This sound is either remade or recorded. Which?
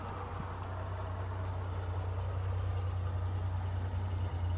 recorded